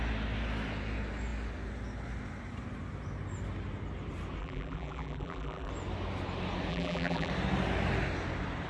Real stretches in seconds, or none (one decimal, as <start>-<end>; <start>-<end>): 0.0-4.4; 5.7-6.7; 7.3-8.7